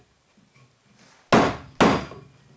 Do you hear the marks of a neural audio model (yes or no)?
no